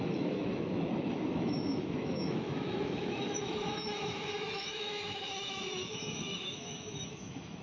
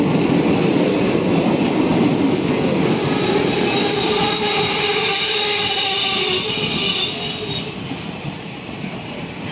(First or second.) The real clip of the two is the second